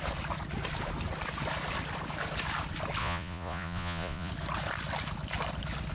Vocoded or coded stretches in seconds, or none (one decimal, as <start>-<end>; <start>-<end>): 3.0-4.3